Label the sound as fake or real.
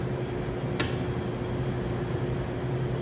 real